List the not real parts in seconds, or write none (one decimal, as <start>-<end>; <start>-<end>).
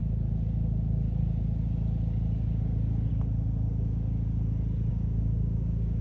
4.9-6.0